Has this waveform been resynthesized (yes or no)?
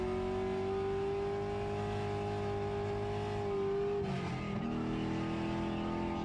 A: no